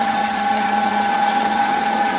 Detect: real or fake fake